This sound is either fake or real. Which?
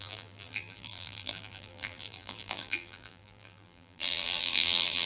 fake